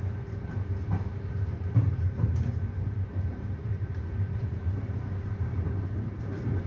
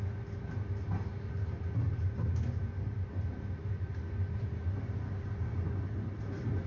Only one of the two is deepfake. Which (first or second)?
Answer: first